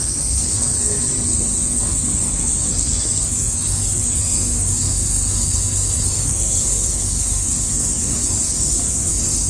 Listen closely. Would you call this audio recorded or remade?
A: remade